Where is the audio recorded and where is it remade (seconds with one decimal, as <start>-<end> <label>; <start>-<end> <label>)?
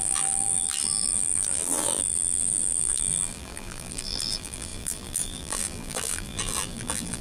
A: 0.0-7.2 remade